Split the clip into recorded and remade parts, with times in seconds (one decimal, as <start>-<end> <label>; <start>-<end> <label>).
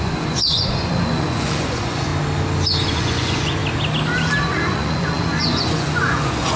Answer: 0.0-2.1 remade; 2.1-2.9 recorded; 2.9-3.6 remade; 3.6-4.4 recorded; 4.4-6.6 remade